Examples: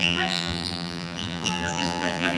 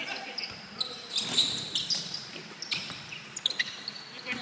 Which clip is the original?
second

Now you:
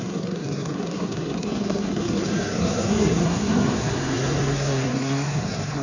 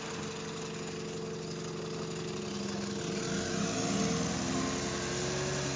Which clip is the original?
second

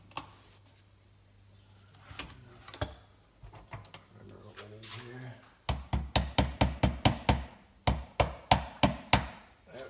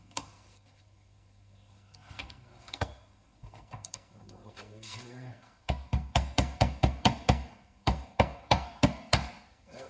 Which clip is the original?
first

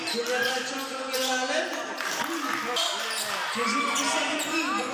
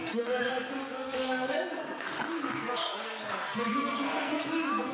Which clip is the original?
first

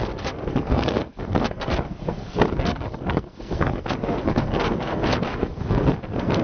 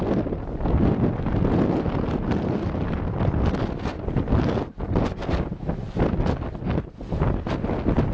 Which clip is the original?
second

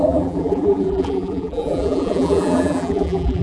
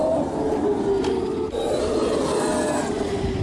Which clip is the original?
second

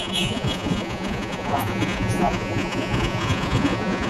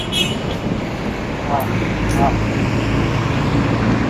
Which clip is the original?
second